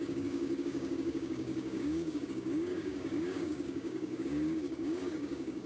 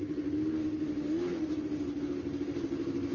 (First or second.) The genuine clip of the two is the second